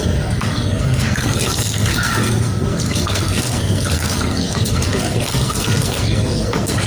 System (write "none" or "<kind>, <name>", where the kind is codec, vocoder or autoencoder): codec, SNAC